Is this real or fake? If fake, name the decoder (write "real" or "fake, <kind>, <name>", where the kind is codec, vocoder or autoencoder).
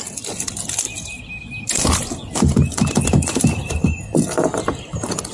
real